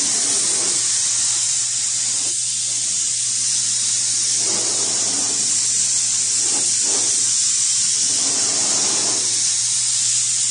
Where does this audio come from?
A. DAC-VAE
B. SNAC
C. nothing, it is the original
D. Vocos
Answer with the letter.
C